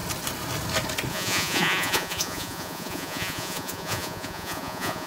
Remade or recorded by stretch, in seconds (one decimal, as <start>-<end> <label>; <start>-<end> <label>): 0.0-1.1 recorded; 1.1-5.1 remade